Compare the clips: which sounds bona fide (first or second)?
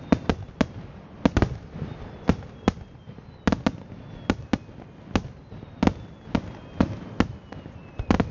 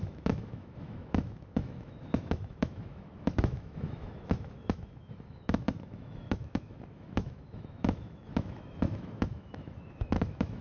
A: first